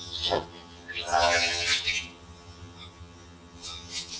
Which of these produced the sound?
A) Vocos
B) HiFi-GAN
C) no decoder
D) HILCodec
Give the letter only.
B